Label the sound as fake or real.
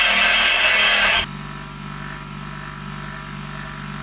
real